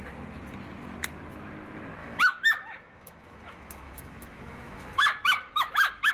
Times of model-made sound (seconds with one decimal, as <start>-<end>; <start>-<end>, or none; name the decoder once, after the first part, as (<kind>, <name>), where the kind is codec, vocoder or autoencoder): 2.0-6.1 (autoencoder, DAC-VAE)